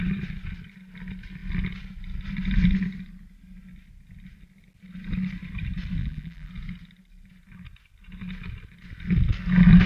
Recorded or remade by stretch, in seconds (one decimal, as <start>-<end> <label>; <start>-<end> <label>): 0.0-6.0 recorded; 6.0-6.5 remade; 6.5-9.9 recorded